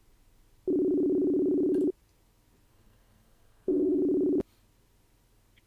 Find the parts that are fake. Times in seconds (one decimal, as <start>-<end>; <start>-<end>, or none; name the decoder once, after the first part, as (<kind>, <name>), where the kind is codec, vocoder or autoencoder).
2.7-4.0 (codec, SNAC)